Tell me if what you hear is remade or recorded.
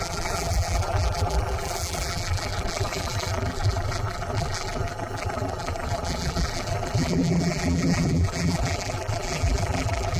remade